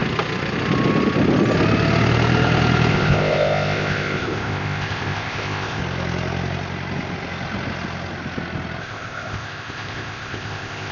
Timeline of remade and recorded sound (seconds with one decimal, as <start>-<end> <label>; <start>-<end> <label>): 0.0-2.9 recorded; 2.9-5.8 remade; 5.8-8.8 recorded; 8.8-10.9 remade